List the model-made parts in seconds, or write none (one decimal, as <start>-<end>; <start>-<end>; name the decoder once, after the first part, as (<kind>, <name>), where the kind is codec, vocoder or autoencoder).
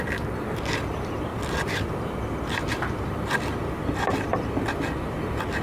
1.3-3.4 (vocoder, BigVGAN v2)